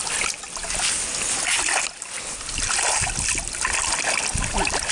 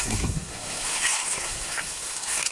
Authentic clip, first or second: first